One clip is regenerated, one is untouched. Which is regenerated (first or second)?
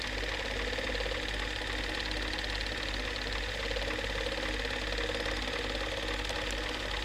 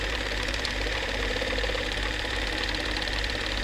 second